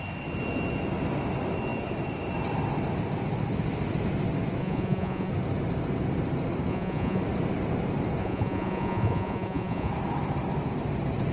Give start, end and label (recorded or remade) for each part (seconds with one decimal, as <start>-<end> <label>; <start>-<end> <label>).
0.0-4.6 recorded; 4.6-5.3 remade; 5.3-6.7 recorded; 6.7-7.2 remade; 7.2-8.2 recorded; 8.2-9.9 remade; 9.9-11.3 recorded